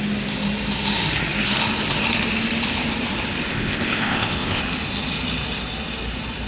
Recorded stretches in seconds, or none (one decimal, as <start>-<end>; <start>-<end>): 0.0-3.5; 4.6-6.5